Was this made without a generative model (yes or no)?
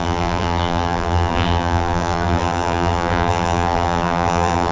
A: no